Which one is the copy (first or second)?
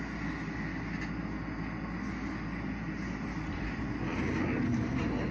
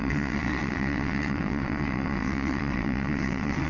second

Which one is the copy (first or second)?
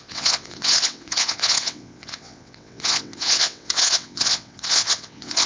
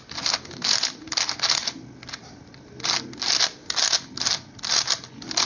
first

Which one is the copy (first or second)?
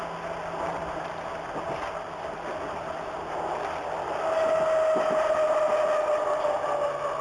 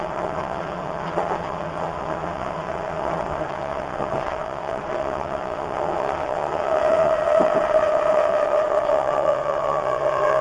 second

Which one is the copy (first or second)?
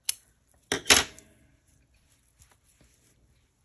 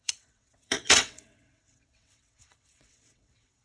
second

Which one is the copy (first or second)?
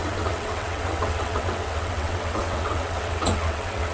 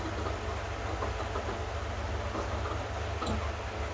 first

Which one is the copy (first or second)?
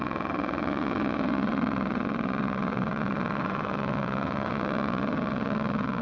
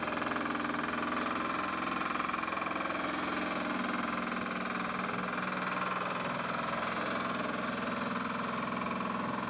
first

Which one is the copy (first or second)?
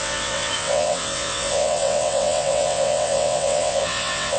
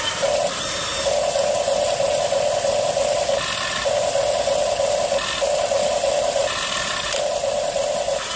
first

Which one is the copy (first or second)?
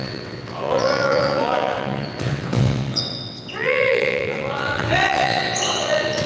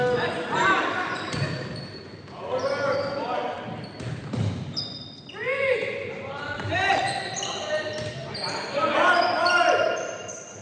first